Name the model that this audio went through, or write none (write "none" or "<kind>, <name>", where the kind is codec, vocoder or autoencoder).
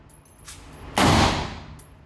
none